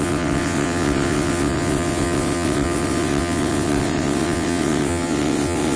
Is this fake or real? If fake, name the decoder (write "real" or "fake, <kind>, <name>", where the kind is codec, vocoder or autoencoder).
fake, vocoder, WaveNeXt